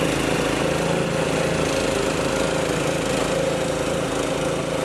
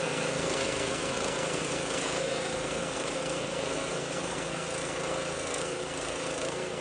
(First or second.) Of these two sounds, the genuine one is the first